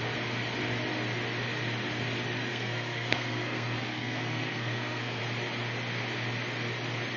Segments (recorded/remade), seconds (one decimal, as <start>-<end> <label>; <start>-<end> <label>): 0.0-2.5 recorded; 2.5-5.2 remade; 5.2-7.2 recorded